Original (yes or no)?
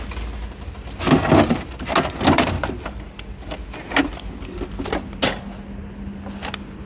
yes